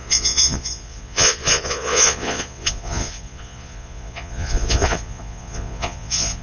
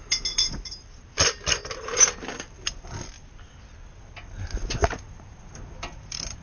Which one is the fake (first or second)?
first